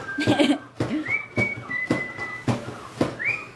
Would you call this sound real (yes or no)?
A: yes